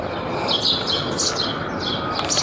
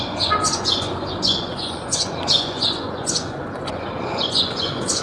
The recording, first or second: first